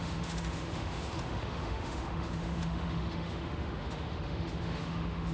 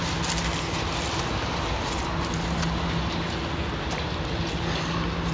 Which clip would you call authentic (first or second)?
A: second